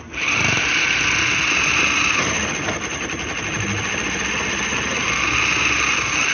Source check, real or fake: real